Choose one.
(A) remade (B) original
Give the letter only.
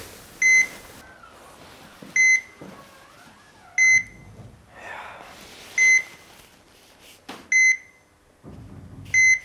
B